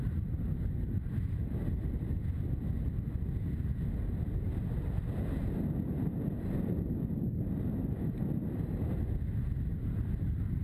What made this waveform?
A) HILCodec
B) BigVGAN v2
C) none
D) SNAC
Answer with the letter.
C